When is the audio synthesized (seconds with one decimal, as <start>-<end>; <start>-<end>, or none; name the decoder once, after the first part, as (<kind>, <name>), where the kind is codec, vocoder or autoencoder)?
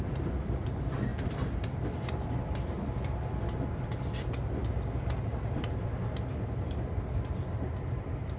none